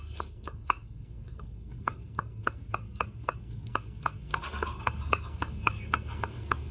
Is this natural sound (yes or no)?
no